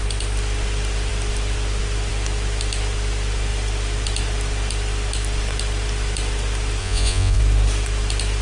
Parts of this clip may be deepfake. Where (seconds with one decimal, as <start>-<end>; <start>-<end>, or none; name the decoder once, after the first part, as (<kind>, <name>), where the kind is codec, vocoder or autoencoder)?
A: 6.8-7.4 (vocoder, Vocos)